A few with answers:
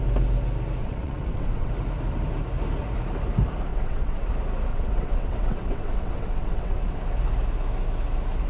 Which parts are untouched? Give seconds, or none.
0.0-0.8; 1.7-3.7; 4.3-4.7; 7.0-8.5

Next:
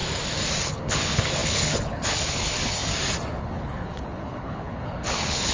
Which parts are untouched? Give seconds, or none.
0.0-0.6; 2.8-3.4

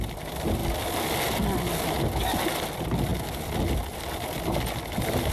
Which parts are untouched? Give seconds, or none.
0.0-5.3

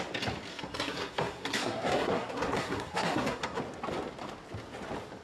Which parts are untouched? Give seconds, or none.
0.0-0.5; 3.6-5.2

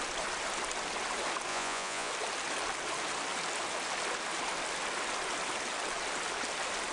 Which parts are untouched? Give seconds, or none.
0.0-1.5; 2.1-6.9

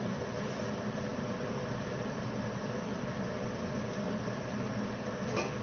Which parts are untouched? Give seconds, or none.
0.0-5.6